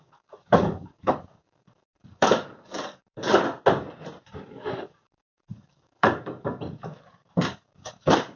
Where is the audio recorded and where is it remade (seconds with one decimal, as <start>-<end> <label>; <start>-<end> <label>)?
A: 0.0-3.4 remade; 3.4-4.2 recorded; 4.2-8.4 remade